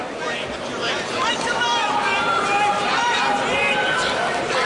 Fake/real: fake